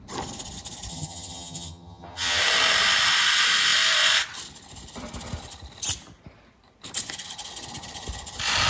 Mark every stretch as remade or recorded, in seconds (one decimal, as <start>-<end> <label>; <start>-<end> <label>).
0.0-0.9 recorded; 0.9-2.4 remade; 2.4-8.7 recorded